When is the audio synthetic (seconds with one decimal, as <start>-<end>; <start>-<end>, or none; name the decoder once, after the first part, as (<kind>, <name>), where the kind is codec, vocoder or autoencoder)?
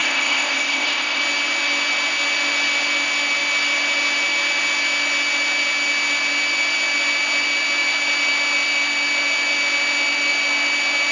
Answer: 0.0-1.2 (codec, ZipCodec)